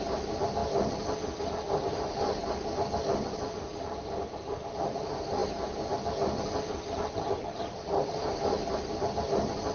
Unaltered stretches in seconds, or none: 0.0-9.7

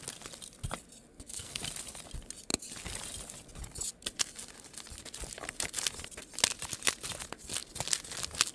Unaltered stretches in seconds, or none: 0.0-1.1; 1.6-8.5

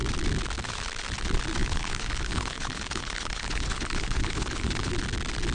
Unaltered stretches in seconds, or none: 0.0-1.6; 4.9-5.5

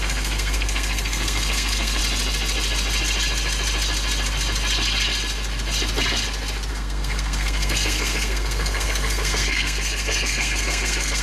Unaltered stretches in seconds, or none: 2.0-6.7

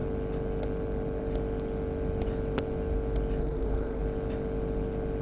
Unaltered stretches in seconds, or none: 0.0-3.4; 4.0-5.2

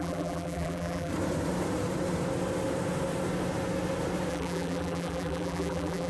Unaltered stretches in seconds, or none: 1.1-4.3

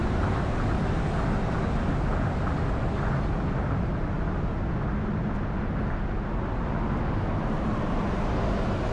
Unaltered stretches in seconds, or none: 0.7-8.9

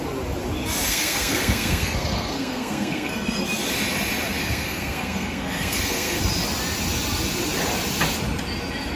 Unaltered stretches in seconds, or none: 0.0-0.9; 3.4-4.4; 6.2-9.0